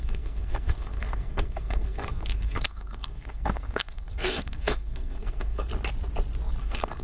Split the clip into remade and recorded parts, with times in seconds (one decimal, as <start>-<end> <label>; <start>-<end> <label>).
0.0-5.7 remade; 5.7-6.6 recorded; 6.6-7.0 remade

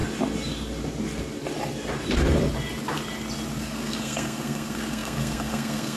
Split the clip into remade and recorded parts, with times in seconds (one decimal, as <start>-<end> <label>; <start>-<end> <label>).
0.0-3.6 recorded; 3.6-6.0 remade